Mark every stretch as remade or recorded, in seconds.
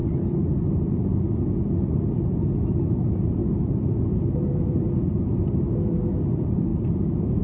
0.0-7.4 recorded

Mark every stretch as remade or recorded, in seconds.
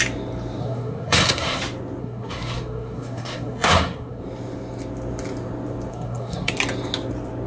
0.0-0.6 recorded; 0.6-1.6 remade; 1.6-2.0 recorded; 2.0-4.2 remade; 4.2-5.9 recorded; 5.9-6.5 remade; 6.5-7.5 recorded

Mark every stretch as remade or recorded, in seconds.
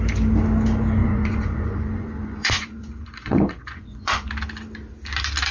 0.0-1.0 recorded; 1.0-4.3 remade; 4.3-5.5 recorded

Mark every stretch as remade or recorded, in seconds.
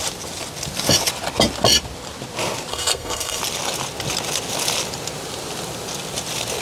0.0-2.7 recorded; 2.7-3.4 remade; 3.4-6.6 recorded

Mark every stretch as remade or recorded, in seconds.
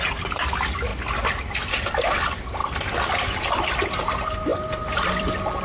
0.0-2.6 recorded; 2.6-3.5 remade; 3.5-4.5 recorded; 4.5-5.6 remade